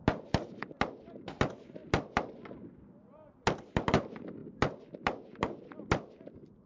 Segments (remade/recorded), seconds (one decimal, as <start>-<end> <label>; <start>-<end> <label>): 0.0-6.7 recorded